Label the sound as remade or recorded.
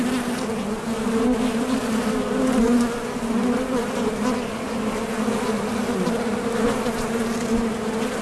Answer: recorded